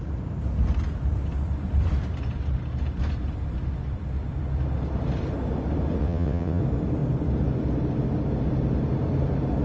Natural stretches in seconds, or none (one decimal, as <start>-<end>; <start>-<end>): 0.0-6.0; 6.6-9.6